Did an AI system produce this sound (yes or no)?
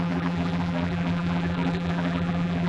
yes